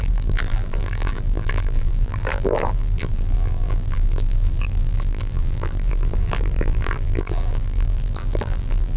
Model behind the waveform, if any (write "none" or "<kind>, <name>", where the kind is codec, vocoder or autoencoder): vocoder, BigVGAN v2